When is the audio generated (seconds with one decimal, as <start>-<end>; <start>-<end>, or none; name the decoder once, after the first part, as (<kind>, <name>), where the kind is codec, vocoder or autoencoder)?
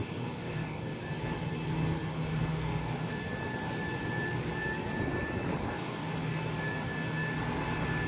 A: 0.0-1.0 (codec, DAC); 2.5-3.1; 5.6-6.1